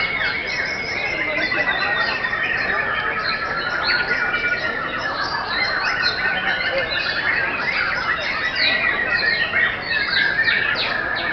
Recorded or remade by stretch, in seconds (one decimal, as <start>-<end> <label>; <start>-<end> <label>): 0.0-11.3 recorded